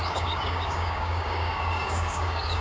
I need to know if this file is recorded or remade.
remade